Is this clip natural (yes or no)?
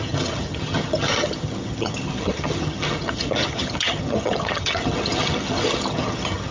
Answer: no